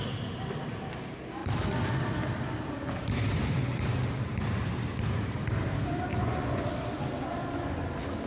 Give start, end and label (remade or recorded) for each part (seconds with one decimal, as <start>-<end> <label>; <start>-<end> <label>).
0.0-6.1 recorded; 6.1-6.7 remade; 6.7-8.3 recorded